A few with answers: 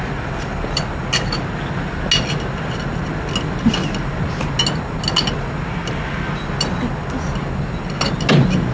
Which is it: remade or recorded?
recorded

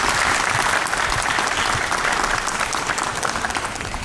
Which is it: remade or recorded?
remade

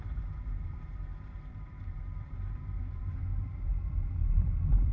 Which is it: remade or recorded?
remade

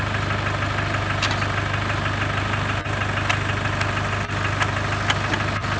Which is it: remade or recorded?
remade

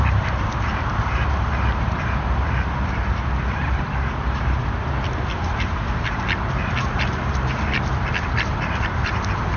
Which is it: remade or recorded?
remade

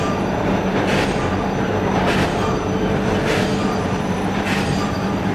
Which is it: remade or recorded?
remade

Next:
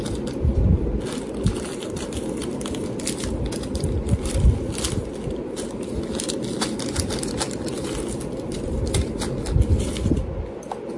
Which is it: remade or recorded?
recorded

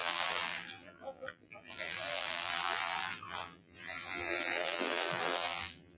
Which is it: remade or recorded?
remade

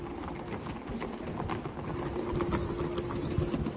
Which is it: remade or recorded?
recorded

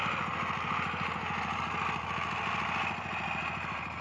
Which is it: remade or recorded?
recorded